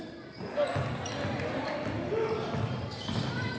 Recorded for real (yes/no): yes